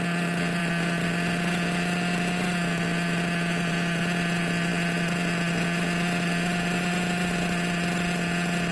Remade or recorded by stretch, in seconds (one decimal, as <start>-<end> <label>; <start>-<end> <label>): 0.0-8.7 recorded

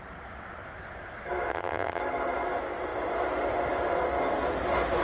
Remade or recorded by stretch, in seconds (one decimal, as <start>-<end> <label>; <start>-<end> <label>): 0.0-1.5 recorded; 1.5-2.0 remade; 2.0-5.0 recorded

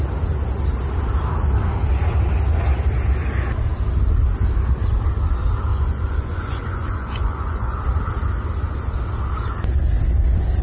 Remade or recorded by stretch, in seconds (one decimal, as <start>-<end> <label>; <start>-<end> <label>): 0.0-5.7 recorded; 5.7-7.8 remade; 7.8-10.6 recorded

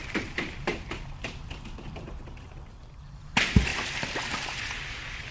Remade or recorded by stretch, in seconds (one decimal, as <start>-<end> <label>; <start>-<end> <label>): 0.0-3.7 remade; 3.7-5.3 recorded

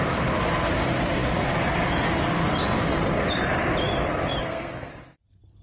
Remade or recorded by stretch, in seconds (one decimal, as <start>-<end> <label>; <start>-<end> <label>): 0.0-4.4 recorded; 4.4-4.9 remade; 4.9-5.6 recorded